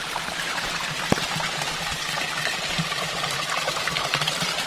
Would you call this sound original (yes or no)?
no